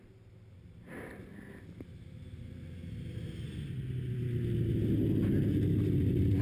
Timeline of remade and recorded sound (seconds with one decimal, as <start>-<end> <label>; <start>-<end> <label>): 0.0-6.4 recorded